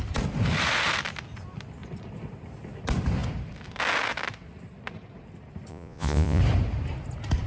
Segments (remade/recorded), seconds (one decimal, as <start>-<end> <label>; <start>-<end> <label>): 0.0-5.7 recorded; 5.7-6.4 remade; 6.4-7.5 recorded